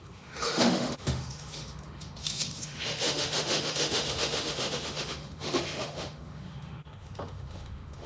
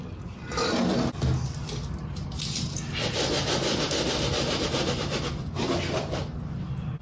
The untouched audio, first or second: second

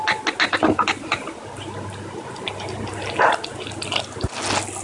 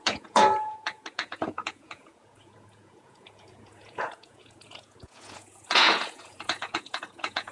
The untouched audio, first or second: first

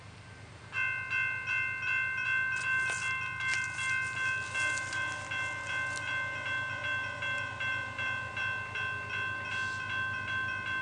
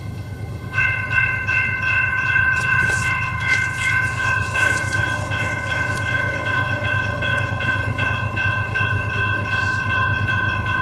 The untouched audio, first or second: first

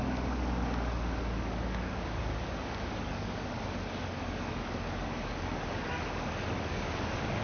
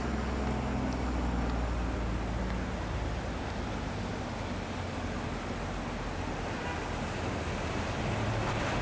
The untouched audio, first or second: second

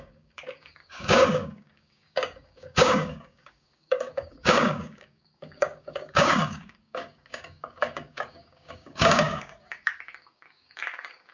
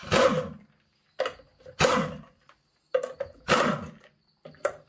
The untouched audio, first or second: second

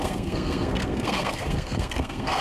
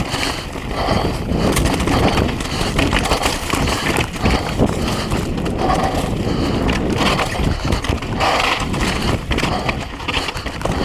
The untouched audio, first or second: second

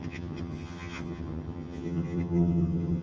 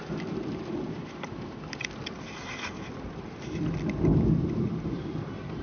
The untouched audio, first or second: second